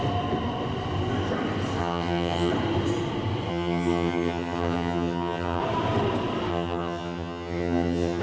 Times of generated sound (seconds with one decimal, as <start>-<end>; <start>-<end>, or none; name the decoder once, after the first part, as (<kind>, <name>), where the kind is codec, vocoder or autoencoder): 1.8-2.5 (vocoder, HiFi-GAN); 3.5-5.6; 6.5-8.2